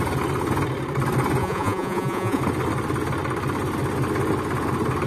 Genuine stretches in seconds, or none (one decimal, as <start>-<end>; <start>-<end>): 0.0-1.4; 2.4-5.1